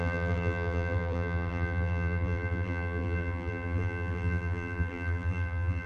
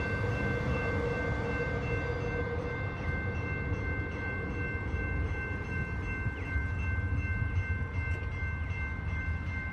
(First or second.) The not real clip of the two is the first